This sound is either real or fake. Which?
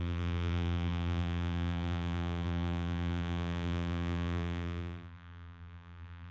fake